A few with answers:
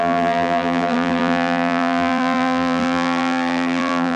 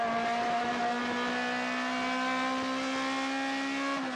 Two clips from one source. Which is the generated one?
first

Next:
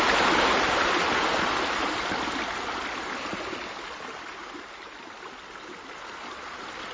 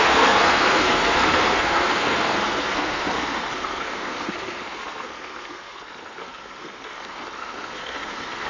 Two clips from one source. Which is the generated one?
second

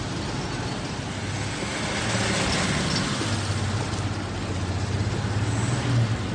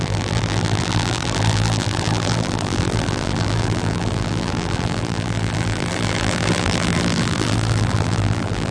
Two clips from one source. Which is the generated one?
second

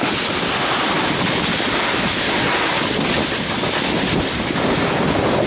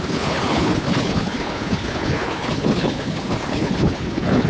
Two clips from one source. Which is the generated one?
second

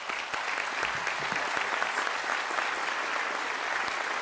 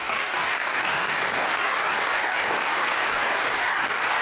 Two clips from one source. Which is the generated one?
second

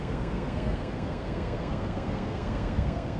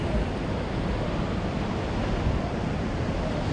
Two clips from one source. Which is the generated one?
first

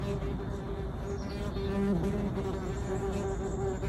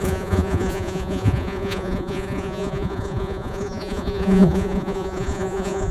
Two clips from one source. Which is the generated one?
second